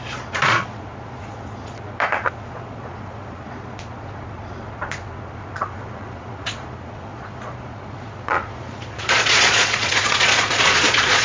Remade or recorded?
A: remade